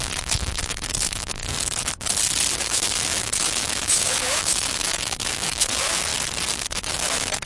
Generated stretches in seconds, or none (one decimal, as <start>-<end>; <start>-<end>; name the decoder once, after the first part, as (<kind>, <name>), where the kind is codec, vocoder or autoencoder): 0.0-1.4 (autoencoder, DAC-VAE); 2.6-6.1; 6.7-7.5